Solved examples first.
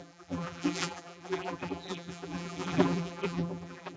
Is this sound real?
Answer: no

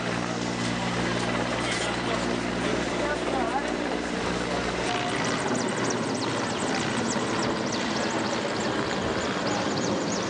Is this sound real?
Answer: yes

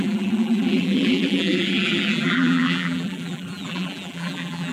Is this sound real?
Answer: no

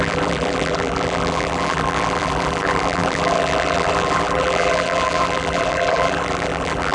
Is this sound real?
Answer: no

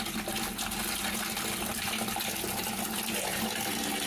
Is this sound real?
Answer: yes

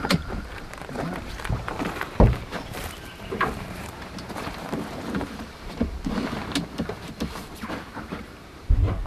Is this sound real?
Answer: no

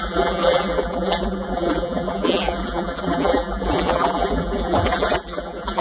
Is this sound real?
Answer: no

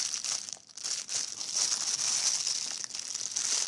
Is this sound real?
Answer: yes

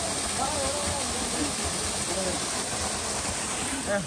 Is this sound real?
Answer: yes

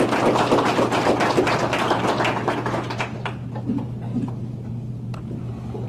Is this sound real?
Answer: yes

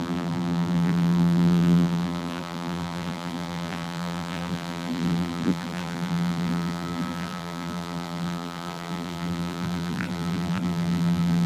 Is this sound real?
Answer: no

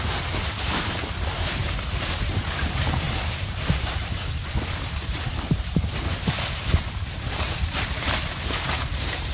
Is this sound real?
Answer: no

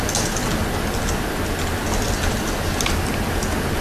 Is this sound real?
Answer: yes